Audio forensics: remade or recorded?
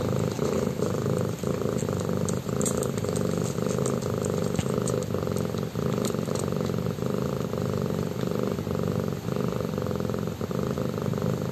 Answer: recorded